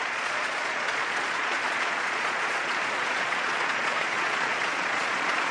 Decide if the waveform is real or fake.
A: fake